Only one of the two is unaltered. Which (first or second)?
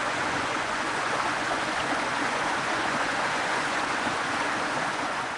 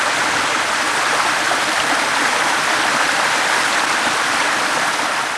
second